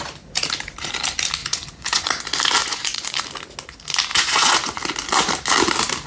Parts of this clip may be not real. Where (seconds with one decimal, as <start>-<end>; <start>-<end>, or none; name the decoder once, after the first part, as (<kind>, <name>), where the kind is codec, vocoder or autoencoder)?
1.4-2.2 (vocoder, Vocos); 2.6-3.2; 4.1-4.8